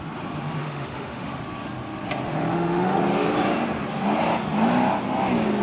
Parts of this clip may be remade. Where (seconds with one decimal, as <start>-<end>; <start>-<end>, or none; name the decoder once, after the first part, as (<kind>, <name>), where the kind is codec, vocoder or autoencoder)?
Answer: 0.6-1.4 (autoencoder, DAC-VAE); 2.3-3.0